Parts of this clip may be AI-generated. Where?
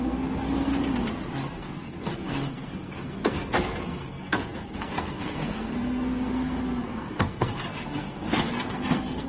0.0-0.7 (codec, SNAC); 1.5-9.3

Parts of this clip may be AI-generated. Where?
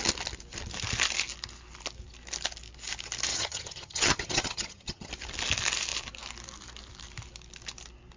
3.3-5.1 (vocoder, HiFi-GAN)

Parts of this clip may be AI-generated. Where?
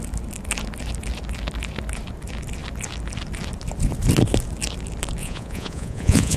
5.2-6.4 (vocoder, Vocos)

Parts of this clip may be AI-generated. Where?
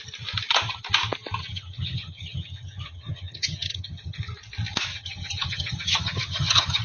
1.4-4.2 (vocoder, HiFi-GAN); 4.9-6.8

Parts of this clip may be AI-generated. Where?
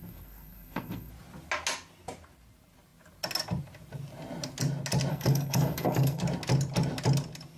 0.0-1.1 (codec, SNAC); 5.1-6.2